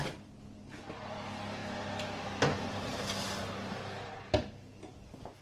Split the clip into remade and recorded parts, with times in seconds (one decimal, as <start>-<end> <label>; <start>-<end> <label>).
0.0-5.4 recorded